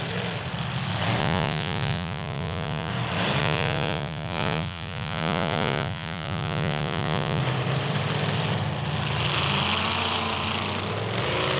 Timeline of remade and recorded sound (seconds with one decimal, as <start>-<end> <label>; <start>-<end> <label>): 0.0-1.2 recorded; 1.2-2.9 remade; 2.9-3.4 recorded; 3.4-7.4 remade; 7.4-11.6 recorded